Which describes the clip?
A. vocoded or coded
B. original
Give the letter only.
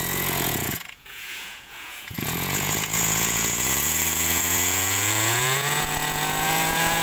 A